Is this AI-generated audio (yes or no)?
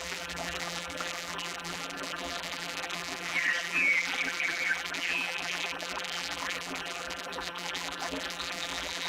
yes